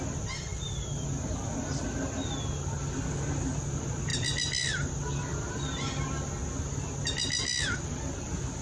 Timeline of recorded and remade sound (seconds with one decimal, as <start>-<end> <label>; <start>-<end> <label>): 0.0-8.6 recorded